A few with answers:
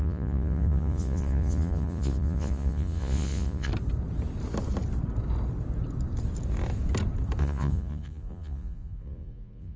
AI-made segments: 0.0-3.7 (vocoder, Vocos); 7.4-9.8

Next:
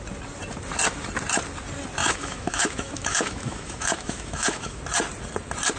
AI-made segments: 2.0-4.8 (autoencoder, DAC-VAE)

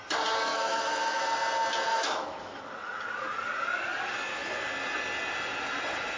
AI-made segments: 0.5-1.2 (autoencoder, DAC-VAE); 1.9-2.6

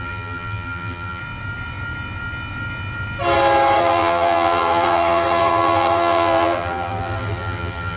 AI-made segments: 0.0-1.2 (vocoder, BigVGAN v2); 3.8-8.0

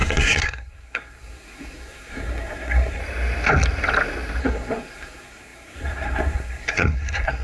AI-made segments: 0.0-3.0 (codec, SNAC); 4.4-7.4

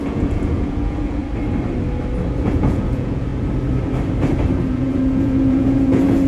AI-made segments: 0.0-1.2 (vocoder, Vocos); 2.4-3.3; 4.7-6.3